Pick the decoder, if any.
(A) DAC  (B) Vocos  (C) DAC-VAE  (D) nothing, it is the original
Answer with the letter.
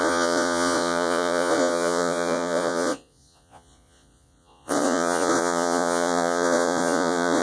B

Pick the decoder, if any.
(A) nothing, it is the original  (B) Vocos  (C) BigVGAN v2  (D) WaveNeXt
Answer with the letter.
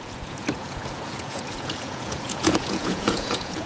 B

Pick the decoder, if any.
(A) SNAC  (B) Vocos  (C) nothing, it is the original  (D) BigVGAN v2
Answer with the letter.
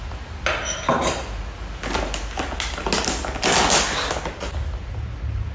C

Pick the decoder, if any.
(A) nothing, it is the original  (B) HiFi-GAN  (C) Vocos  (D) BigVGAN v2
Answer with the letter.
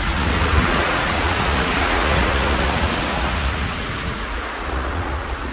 C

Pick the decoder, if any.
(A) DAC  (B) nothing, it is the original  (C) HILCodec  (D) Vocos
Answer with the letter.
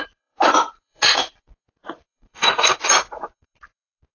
D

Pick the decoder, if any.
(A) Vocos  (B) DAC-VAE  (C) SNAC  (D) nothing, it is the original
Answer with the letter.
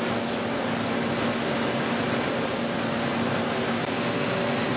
D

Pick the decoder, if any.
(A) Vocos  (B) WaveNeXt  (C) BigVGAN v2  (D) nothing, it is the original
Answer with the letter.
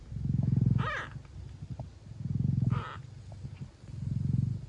D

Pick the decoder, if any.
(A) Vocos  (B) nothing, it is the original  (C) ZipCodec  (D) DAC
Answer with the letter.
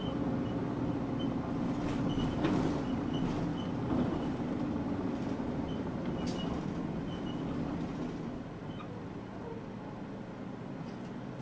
B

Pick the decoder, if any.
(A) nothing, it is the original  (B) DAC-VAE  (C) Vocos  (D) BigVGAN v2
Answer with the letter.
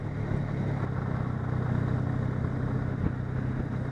A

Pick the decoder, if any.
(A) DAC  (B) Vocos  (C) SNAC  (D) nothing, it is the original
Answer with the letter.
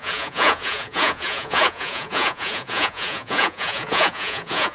B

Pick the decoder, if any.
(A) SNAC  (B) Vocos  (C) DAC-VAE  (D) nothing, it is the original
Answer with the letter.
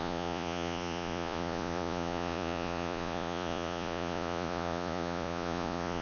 B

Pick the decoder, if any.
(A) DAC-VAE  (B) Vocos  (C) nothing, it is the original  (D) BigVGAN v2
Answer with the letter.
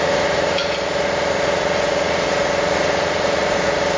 B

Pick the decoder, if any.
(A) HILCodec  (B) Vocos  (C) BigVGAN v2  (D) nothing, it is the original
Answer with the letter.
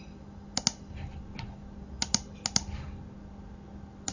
D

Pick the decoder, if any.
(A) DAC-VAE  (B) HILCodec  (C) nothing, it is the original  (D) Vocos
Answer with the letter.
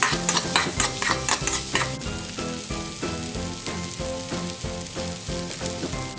C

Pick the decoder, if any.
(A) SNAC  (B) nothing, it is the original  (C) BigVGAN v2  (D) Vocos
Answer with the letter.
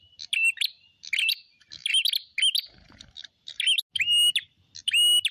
B